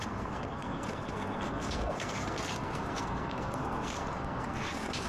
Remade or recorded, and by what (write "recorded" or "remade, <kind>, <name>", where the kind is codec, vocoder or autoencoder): remade, codec, SNAC